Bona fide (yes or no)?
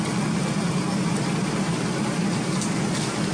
yes